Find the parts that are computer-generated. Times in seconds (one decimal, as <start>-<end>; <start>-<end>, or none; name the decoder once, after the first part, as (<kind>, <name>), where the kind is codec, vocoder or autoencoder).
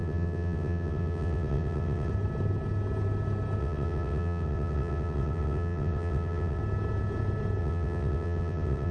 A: 0.0-2.1 (vocoder, WaveNeXt); 3.6-6.6; 7.6-8.9